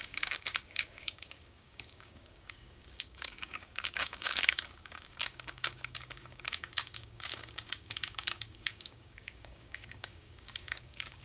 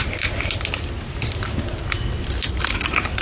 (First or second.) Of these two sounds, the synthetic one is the first